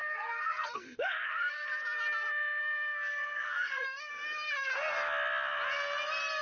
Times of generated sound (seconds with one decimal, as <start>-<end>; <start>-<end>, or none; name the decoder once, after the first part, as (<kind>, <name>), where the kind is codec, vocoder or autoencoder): 0.0-1.5 (codec, SNAC); 2.6-4.1